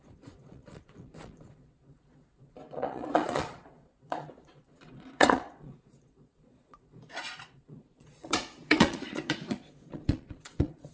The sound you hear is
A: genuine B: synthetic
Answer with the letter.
B